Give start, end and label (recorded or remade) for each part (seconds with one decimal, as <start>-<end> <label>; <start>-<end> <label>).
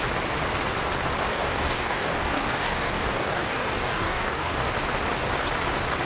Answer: 0.0-1.3 recorded; 1.3-4.7 remade; 4.7-6.1 recorded